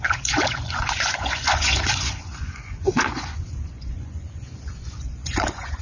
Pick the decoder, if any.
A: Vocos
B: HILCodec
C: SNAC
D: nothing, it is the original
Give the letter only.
A